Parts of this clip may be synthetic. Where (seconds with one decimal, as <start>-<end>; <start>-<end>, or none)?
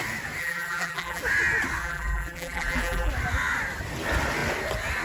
0.4-1.2; 1.8-3.1